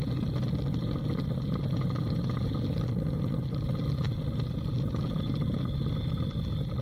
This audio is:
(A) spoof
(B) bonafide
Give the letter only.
B